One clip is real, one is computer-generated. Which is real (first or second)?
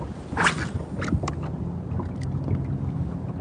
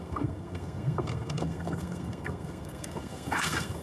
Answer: first